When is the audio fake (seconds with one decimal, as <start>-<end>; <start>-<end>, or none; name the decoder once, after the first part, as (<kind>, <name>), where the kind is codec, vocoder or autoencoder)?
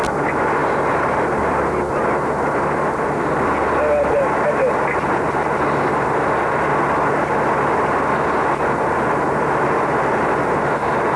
none